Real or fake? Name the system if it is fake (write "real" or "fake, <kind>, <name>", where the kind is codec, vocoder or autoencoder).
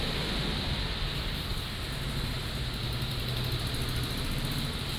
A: real